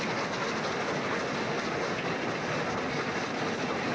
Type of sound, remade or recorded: recorded